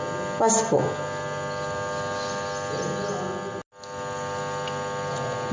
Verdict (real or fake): real